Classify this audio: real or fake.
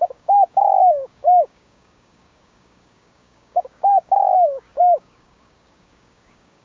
fake